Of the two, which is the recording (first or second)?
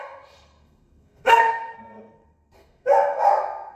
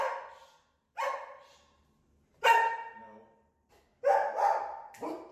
second